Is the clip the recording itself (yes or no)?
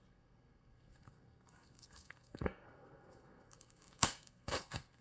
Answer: no